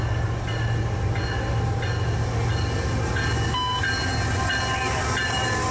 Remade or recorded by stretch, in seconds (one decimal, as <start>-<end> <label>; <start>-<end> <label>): 0.0-5.7 recorded